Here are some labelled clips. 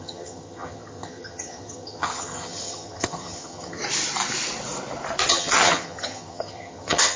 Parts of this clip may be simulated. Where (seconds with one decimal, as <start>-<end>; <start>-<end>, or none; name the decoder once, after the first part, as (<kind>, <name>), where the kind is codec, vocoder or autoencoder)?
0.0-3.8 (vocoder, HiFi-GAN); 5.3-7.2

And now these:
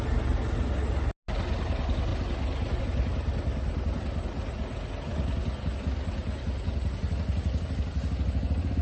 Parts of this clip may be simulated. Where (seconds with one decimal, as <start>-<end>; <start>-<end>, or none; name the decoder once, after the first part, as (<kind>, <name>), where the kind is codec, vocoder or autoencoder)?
none

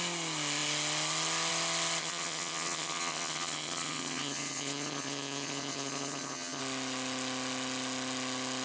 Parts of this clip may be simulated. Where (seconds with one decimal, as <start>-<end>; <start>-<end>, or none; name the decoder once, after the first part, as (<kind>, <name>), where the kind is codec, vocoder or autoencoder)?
2.0-6.6 (vocoder, HiFi-GAN)

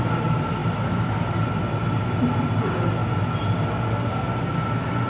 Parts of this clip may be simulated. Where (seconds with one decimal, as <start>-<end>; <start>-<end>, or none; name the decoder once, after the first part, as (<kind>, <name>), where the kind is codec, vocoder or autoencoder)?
none

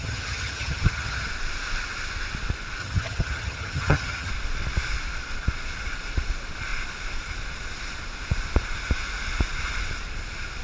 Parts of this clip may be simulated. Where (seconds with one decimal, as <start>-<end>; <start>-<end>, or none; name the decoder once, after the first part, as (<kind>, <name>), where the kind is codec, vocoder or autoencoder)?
0.0-1.3 (vocoder, HiFi-GAN); 2.8-4.3

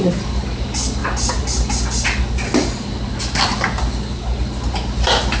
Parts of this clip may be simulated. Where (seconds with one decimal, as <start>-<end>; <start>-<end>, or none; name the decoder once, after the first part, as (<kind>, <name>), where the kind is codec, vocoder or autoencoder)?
none